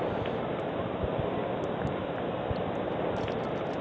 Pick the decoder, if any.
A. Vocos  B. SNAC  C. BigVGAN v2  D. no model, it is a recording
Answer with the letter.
D